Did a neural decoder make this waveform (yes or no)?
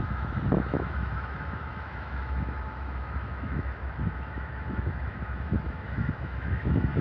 yes